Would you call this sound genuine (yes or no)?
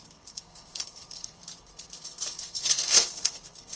no